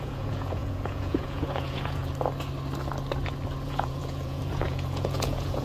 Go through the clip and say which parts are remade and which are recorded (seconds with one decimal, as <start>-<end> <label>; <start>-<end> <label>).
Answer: 0.0-2.0 remade; 2.0-3.6 recorded; 3.6-5.6 remade